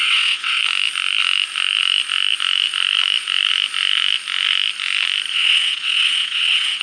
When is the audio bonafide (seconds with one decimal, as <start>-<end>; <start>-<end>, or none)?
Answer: 0.6-5.3